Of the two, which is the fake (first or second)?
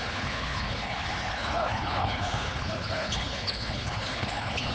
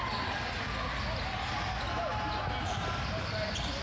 first